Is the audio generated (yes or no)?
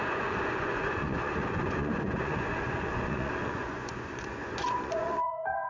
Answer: yes